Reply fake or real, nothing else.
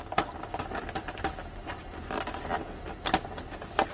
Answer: real